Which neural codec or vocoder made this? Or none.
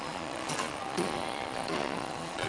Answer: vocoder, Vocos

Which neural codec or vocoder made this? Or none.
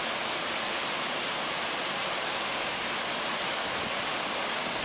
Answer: none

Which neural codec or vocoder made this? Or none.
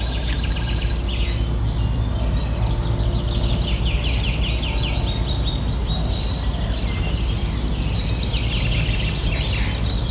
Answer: none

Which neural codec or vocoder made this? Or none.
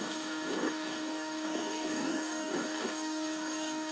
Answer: codec, DAC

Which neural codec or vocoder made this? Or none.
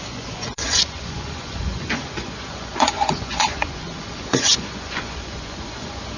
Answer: vocoder, Vocos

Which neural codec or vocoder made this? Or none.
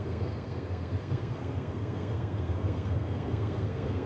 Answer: codec, SNAC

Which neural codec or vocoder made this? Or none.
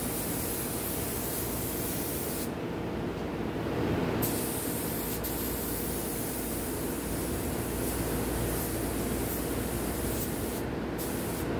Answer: none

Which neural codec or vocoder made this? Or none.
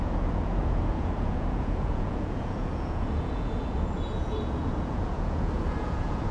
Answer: vocoder, Vocos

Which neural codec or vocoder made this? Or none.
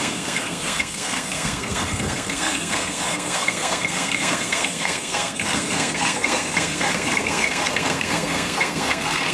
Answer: codec, SNAC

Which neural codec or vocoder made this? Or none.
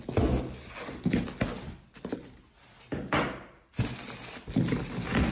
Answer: none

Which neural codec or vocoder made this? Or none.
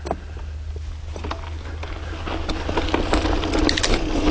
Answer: none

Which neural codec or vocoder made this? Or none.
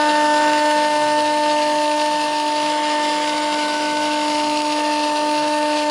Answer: autoencoder, DAC-VAE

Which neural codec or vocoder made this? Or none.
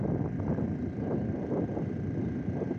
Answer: vocoder, BigVGAN v2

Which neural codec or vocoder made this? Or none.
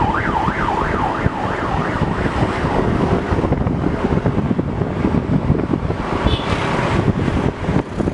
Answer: none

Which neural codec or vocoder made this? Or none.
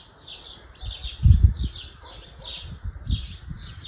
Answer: none